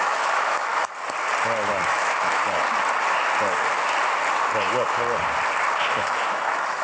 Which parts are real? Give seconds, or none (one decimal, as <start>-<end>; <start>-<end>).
0.7-1.7; 2.4-5.9